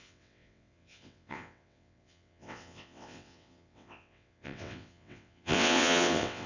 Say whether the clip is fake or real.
fake